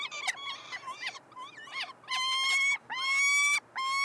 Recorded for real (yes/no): yes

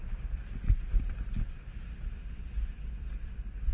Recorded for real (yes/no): yes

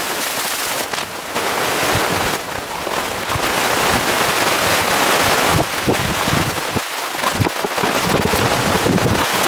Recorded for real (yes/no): yes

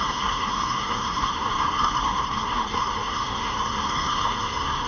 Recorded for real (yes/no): no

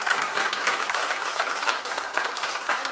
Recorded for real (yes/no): no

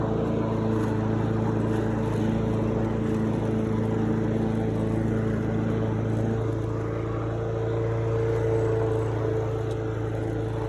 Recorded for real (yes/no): yes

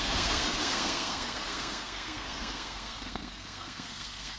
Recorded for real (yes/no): no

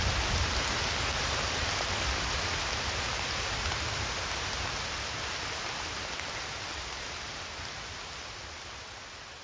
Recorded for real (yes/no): yes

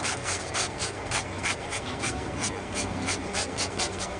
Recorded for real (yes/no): no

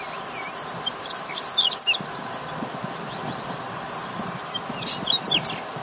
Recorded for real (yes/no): yes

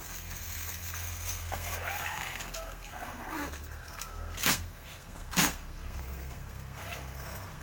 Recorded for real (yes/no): no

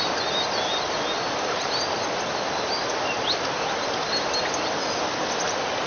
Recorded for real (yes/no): yes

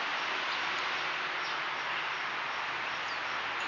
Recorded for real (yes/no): yes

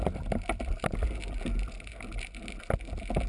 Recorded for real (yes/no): yes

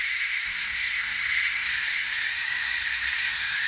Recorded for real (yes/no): no